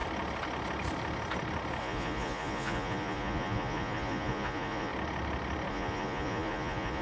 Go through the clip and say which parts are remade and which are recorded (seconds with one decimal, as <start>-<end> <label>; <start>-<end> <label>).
0.0-1.8 recorded; 1.8-4.9 remade; 4.9-5.7 recorded; 5.7-7.0 remade